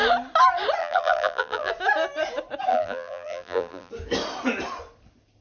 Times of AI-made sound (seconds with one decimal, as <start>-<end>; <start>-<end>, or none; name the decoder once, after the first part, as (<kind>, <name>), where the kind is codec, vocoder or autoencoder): 0.8-1.7 (vocoder, BigVGAN v2); 2.7-3.9